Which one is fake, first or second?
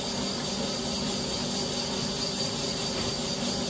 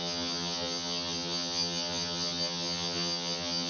second